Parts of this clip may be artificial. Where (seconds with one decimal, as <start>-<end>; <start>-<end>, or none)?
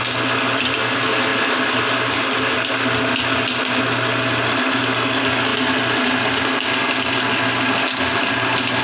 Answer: none